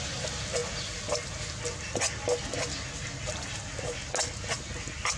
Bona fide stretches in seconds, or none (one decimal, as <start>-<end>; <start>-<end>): 0.0-5.2